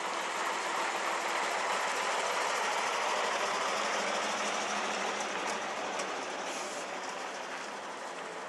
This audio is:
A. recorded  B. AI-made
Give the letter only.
A